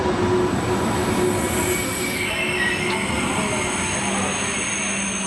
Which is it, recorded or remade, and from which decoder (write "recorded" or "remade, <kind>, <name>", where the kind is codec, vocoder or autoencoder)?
recorded